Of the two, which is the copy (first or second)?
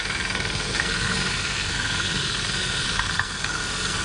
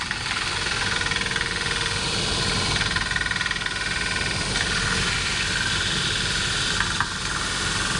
first